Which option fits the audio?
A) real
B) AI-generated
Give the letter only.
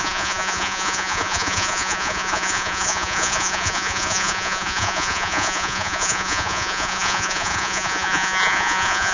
B